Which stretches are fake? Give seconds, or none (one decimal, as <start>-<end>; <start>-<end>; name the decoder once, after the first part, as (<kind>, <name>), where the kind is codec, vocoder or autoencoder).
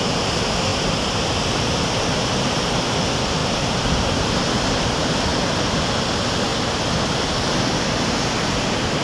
none